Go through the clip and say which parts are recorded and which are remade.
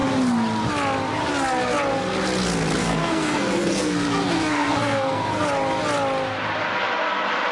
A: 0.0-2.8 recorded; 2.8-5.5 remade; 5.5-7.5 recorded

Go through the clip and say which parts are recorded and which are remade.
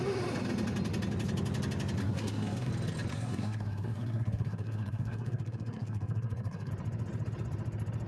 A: 0.0-2.0 recorded; 2.0-2.7 remade; 2.7-3.1 recorded; 3.1-6.7 remade; 6.7-8.1 recorded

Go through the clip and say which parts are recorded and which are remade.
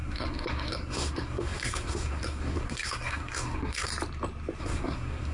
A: 0.0-3.9 remade; 3.9-4.6 recorded; 4.6-5.3 remade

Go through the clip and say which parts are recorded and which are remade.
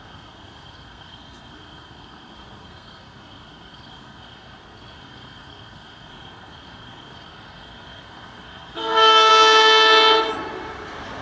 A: 0.0-9.3 remade; 9.3-11.2 recorded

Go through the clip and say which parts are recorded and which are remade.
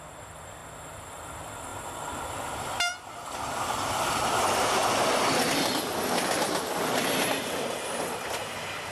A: 0.0-8.9 recorded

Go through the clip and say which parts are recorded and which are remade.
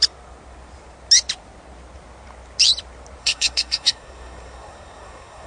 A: 0.0-3.2 recorded; 3.2-5.5 remade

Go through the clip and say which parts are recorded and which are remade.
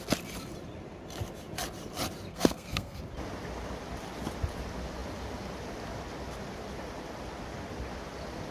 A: 0.0-2.3 recorded; 2.3-3.0 remade; 3.0-8.5 recorded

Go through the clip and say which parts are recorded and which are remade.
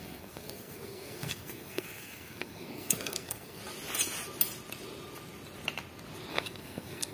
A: 0.0-3.6 remade; 3.6-6.3 recorded; 6.3-7.1 remade